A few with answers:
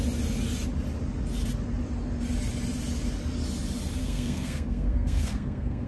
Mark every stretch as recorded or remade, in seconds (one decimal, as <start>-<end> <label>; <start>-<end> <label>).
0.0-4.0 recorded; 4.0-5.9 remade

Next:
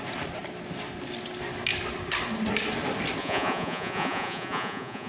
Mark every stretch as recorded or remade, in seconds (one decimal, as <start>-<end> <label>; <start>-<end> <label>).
0.0-3.2 recorded; 3.2-5.1 remade

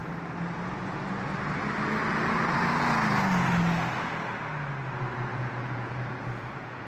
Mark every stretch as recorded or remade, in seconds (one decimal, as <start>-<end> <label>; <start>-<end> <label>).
0.0-5.3 recorded; 5.3-6.9 remade

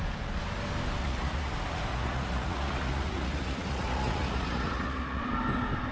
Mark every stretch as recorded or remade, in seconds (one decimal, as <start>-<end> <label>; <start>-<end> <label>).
0.0-1.0 recorded; 1.0-1.5 remade; 1.5-1.9 recorded; 1.9-5.2 remade; 5.2-5.9 recorded

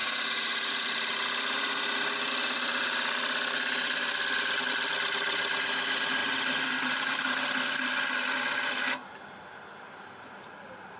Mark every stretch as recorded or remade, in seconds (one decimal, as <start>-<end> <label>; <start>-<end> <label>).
0.0-11.0 recorded

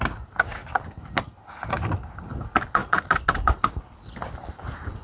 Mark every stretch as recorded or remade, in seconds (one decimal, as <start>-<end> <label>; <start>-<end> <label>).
0.0-0.6 recorded; 0.6-1.2 remade; 1.2-2.8 recorded; 2.8-4.5 remade; 4.5-5.0 recorded